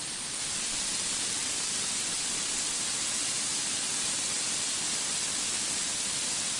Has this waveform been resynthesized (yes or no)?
no